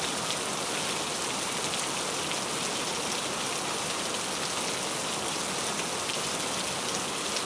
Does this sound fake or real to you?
real